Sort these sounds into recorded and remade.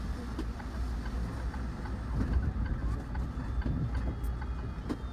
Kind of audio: recorded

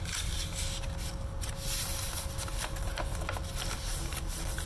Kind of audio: recorded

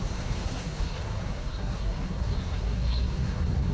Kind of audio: remade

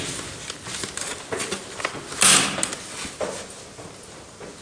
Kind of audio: recorded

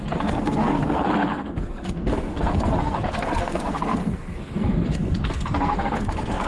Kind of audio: remade